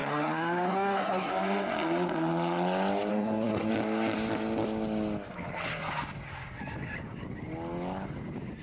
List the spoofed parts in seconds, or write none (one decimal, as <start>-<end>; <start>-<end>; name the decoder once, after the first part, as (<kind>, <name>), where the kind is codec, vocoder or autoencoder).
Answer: 0.0-1.3 (codec, SNAC); 3.1-3.7

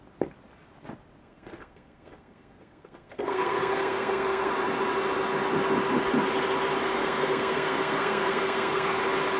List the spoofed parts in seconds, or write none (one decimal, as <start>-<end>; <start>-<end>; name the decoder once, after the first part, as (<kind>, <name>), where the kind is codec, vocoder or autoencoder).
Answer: 1.2-4.5 (codec, SNAC); 6.8-9.0